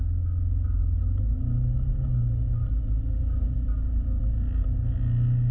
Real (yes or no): yes